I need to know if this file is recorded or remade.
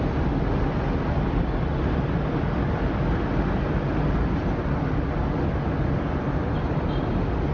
recorded